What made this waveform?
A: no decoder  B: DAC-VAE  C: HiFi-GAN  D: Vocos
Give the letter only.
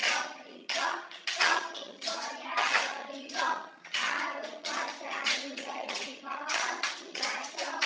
C